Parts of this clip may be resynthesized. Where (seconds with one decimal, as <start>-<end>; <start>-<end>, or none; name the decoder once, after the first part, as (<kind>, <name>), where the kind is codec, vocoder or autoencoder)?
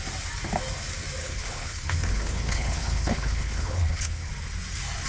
1.2-4.3 (codec, HILCodec)